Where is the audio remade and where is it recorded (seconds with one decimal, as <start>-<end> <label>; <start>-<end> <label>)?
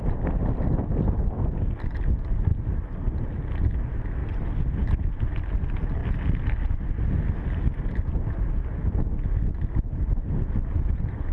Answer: 0.0-2.5 recorded; 2.5-3.3 remade; 3.3-4.2 recorded; 4.2-4.9 remade; 4.9-11.3 recorded